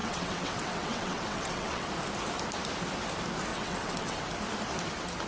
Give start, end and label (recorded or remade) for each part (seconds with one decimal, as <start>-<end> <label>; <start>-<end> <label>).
0.0-1.9 remade; 1.9-3.5 recorded; 3.5-4.2 remade; 4.2-5.3 recorded